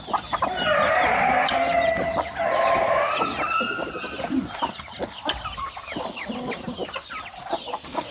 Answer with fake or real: real